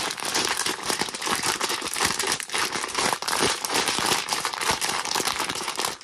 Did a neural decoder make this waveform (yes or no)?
yes